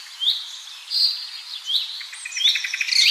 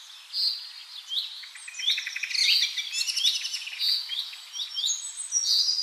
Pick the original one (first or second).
second